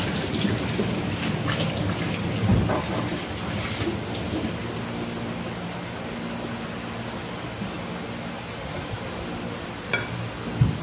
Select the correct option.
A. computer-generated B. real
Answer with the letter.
B